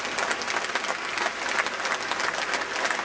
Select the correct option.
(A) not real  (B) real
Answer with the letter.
B